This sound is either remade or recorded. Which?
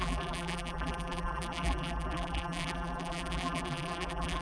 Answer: remade